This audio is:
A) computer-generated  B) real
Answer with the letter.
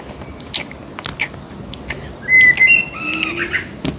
B